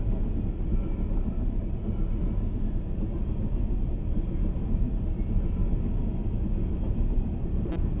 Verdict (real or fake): real